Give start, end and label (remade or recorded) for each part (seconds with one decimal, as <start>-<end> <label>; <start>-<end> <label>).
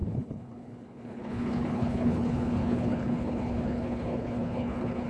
0.0-5.1 remade